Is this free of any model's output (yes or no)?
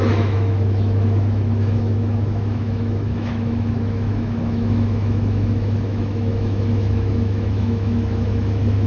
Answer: no